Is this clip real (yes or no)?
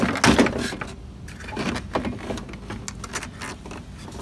yes